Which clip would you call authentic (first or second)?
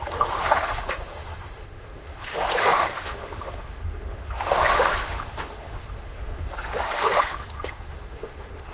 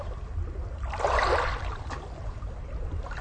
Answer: second